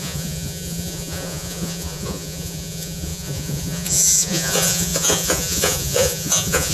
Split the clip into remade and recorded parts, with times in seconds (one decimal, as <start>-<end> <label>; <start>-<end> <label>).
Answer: 0.0-6.7 remade